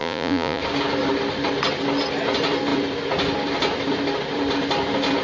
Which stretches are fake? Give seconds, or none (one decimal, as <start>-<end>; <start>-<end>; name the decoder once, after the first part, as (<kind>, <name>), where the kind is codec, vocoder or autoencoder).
0.0-0.6 (vocoder, Vocos)